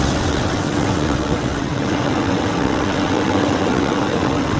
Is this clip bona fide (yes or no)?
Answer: no